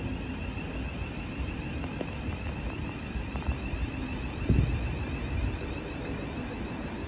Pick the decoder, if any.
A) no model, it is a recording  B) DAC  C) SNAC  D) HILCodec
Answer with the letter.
A